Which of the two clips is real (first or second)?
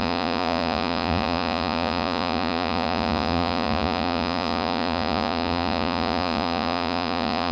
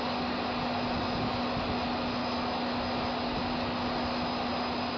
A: second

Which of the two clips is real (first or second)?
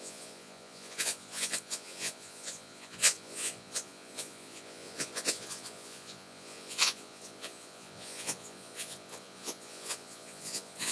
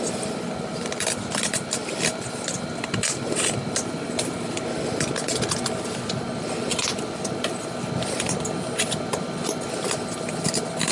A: second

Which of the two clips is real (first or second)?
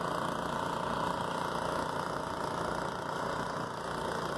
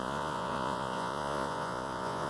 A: first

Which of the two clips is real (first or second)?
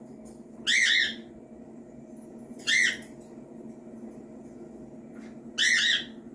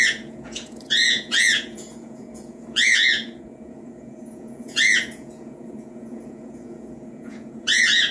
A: first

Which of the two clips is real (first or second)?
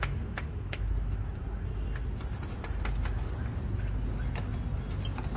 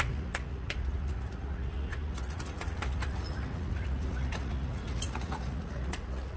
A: first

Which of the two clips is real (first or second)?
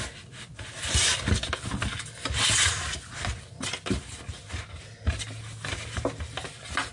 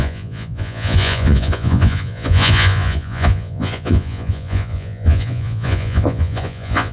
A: first